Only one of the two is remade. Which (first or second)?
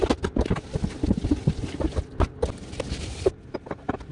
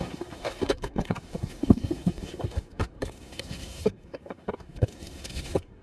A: second